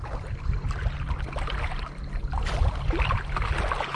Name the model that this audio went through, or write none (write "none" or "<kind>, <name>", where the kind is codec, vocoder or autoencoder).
none